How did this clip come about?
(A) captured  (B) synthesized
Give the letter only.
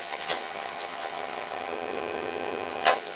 B